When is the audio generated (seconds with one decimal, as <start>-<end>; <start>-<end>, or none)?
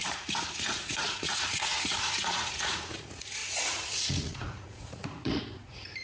0.0-6.0